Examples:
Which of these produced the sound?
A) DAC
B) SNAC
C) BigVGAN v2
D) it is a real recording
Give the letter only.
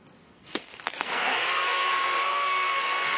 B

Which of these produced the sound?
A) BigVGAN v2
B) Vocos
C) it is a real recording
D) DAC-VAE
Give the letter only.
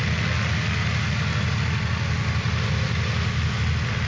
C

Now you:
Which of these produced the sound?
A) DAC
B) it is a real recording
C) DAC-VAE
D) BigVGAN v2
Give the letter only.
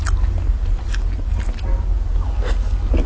B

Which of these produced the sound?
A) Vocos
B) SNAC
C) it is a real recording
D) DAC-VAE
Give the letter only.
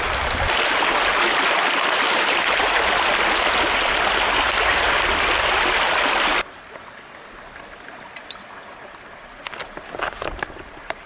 C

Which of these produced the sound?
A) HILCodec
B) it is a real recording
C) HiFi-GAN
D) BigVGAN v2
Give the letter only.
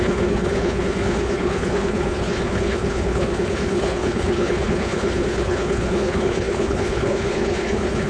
A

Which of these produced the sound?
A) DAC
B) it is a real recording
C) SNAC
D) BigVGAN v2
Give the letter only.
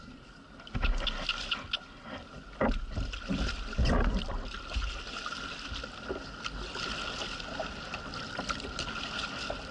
B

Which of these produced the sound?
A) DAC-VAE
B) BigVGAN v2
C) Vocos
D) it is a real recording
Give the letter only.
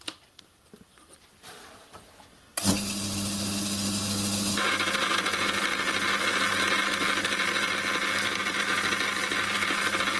D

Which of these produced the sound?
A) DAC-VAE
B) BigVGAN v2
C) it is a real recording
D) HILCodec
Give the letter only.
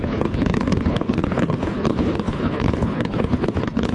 D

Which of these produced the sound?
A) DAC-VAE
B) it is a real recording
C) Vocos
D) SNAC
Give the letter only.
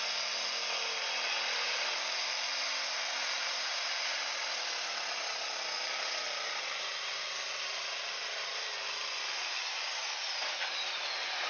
B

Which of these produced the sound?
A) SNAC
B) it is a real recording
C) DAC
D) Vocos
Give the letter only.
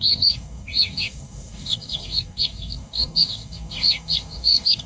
C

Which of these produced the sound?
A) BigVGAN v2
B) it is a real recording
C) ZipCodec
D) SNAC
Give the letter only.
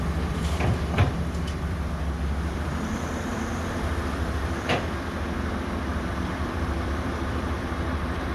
A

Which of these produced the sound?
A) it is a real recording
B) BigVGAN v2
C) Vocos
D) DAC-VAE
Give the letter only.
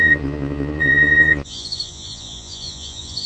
C